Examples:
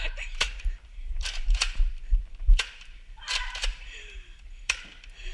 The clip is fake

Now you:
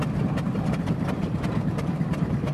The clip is fake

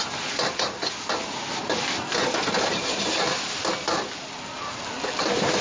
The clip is real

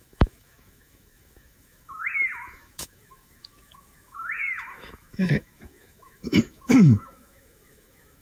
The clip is fake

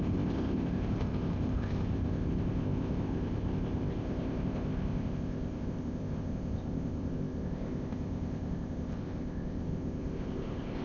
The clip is fake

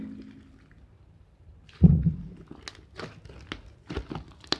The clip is real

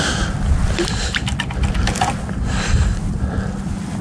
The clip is real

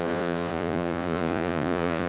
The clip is fake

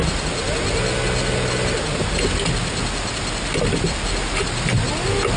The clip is real